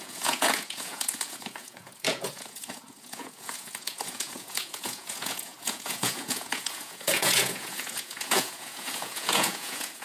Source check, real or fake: fake